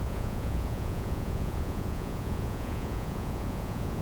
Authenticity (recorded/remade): remade